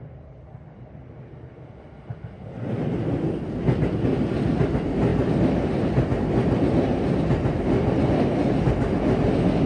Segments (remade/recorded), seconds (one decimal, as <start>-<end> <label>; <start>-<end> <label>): 0.0-9.7 recorded